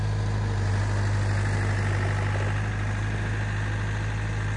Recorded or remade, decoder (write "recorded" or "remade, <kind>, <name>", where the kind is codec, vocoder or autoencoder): recorded